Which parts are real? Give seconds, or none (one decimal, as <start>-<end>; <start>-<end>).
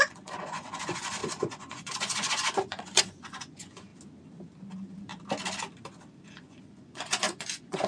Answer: 3.9-4.6; 5.1-6.3